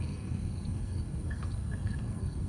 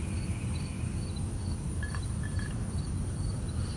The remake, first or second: first